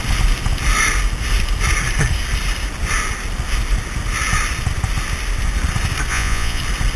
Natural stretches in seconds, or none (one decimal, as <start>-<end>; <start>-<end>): 0.0-6.1; 6.6-7.0